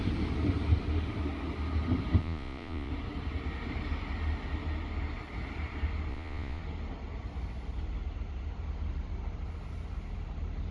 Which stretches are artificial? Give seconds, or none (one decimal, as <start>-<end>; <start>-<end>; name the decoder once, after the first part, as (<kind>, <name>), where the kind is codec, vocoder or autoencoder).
2.2-2.9 (vocoder, Vocos); 6.1-6.6